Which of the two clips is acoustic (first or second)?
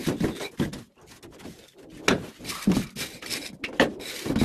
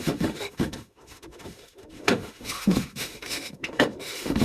first